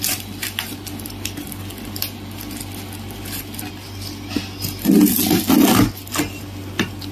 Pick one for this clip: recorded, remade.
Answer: recorded